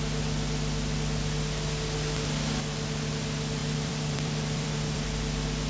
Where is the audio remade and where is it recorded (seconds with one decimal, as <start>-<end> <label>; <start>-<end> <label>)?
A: 0.0-3.6 recorded; 3.6-5.0 remade; 5.0-5.7 recorded